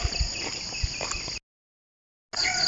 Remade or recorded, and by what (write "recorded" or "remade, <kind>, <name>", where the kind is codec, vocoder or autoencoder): recorded